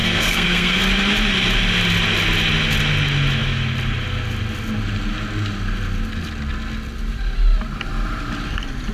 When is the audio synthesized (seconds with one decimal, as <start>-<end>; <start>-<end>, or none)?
0.0-0.8

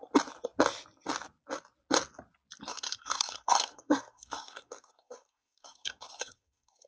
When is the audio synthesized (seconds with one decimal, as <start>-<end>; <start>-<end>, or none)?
2.7-6.9

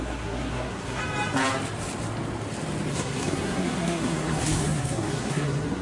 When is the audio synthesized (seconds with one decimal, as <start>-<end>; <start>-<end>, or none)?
0.0-1.0; 2.9-5.8